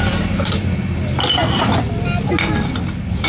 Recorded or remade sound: recorded